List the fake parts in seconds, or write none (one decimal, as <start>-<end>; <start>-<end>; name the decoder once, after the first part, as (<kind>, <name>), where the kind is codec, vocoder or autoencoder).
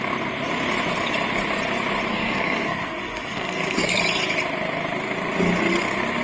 2.1-4.0 (codec, SNAC)